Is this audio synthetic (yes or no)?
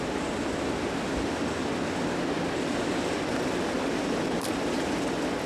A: no